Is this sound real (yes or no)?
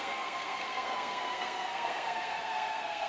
no